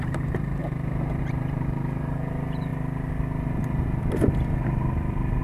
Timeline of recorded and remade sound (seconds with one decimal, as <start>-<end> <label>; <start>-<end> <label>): 0.0-0.6 remade; 0.6-1.2 recorded; 1.2-2.7 remade; 2.7-5.4 recorded